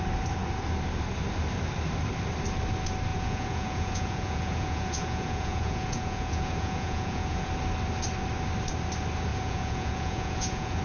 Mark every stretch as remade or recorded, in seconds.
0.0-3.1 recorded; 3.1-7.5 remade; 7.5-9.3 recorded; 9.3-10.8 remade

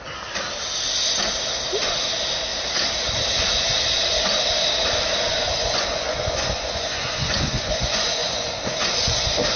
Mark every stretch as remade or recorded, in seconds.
0.0-5.3 recorded; 5.3-9.6 remade

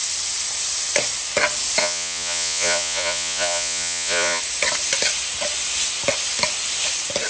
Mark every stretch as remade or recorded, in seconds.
0.0-1.8 recorded; 1.8-4.4 remade; 4.4-7.3 recorded